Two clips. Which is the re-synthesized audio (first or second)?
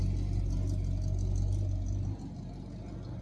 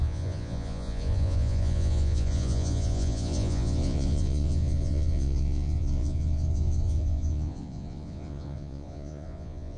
second